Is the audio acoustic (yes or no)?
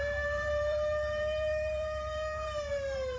no